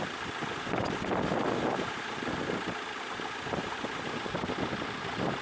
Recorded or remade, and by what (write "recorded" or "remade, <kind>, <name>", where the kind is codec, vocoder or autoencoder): recorded